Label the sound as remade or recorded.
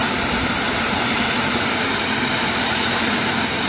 remade